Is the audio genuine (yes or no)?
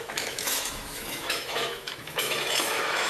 no